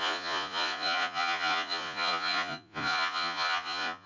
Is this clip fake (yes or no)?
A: yes